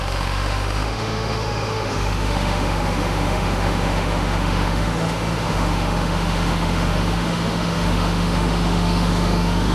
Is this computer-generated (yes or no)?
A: yes